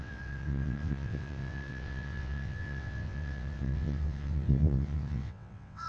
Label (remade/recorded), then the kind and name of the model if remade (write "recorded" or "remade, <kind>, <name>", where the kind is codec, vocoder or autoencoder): remade, vocoder, WaveNeXt